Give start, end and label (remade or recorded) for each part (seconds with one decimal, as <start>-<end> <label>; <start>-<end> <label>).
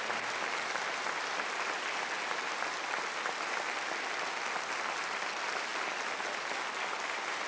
0.0-7.5 recorded